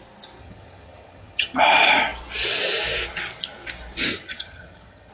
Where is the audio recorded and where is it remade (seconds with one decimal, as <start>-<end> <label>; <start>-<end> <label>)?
0.0-0.4 recorded; 0.4-1.6 remade; 1.6-4.1 recorded; 4.1-5.1 remade